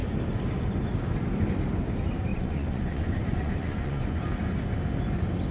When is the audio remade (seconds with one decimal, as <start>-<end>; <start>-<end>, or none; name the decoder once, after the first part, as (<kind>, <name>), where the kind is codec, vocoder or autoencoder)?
2.3-4.2 (vocoder, Vocos)